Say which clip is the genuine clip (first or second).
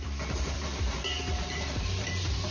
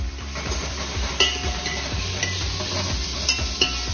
second